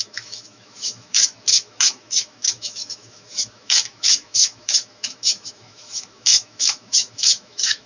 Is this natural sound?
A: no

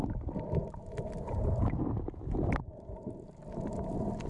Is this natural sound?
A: yes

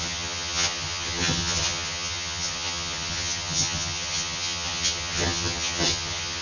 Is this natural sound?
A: no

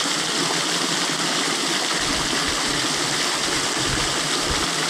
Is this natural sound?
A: yes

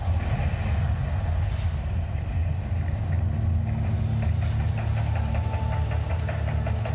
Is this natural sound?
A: yes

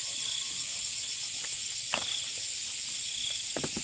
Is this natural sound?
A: yes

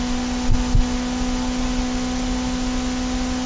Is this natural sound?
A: yes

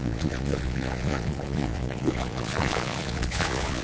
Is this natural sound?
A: no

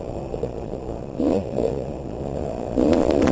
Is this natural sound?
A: no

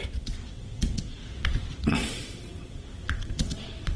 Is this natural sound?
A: no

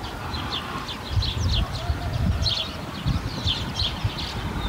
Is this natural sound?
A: yes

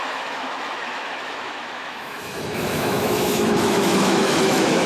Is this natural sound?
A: no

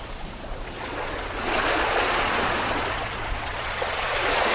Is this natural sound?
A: no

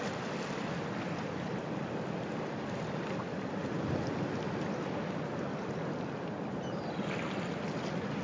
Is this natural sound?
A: yes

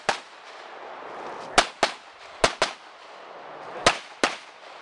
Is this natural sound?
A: yes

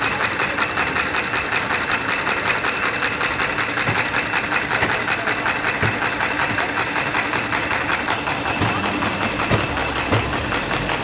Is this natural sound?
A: yes